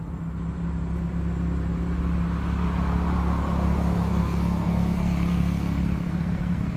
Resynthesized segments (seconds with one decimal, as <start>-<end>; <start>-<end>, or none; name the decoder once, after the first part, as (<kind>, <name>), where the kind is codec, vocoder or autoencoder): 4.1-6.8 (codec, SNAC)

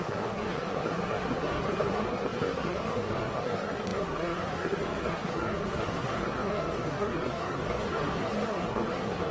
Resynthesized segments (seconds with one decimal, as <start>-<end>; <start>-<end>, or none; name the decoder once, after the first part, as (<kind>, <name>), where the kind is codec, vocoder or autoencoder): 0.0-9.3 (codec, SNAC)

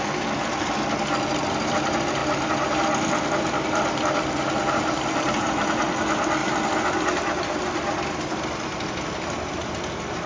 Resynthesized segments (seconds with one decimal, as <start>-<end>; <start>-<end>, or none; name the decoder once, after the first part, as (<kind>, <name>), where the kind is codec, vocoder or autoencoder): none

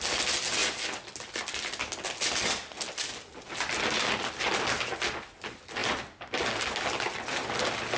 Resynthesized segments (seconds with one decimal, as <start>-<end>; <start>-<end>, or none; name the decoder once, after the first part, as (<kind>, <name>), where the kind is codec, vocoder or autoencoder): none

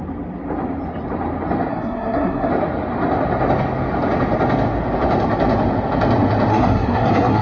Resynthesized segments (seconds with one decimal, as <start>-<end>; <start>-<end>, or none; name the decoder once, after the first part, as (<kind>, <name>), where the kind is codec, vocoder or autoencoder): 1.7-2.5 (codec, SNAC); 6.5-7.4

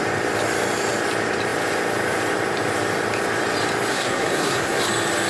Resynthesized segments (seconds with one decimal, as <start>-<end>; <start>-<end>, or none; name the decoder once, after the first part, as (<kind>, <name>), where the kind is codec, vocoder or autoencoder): 3.9-4.8 (codec, SNAC)